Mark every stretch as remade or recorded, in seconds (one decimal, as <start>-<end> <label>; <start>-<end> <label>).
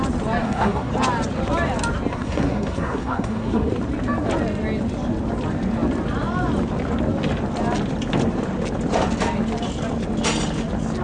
0.0-0.4 recorded; 0.4-0.9 remade; 0.9-2.1 recorded; 2.1-3.7 remade; 3.7-11.0 recorded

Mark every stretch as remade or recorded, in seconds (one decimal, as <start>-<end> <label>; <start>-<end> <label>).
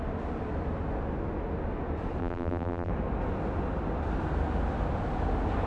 0.0-2.2 recorded; 2.2-2.9 remade; 2.9-5.7 recorded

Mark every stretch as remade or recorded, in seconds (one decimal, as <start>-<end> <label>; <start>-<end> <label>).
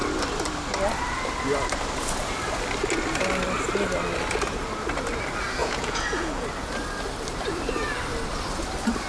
0.0-5.6 recorded; 5.6-6.3 remade; 6.3-9.1 recorded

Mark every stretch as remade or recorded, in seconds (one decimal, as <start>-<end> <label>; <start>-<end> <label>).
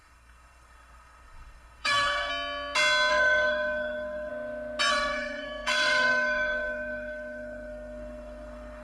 0.0-2.3 remade; 2.3-3.1 recorded; 3.1-4.3 remade; 4.3-4.9 recorded; 4.9-8.8 remade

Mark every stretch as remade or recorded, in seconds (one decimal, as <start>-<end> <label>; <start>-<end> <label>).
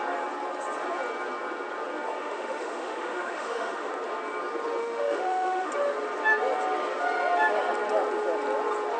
0.0-2.2 recorded; 2.2-3.9 remade; 3.9-4.8 recorded; 4.8-5.7 remade; 5.7-9.0 recorded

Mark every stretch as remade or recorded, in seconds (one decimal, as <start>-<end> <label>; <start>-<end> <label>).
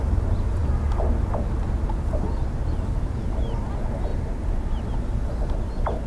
0.0-6.1 recorded